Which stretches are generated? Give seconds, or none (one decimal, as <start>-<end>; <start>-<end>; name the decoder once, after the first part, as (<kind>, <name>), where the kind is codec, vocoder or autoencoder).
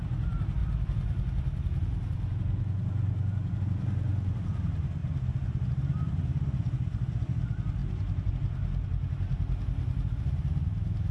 none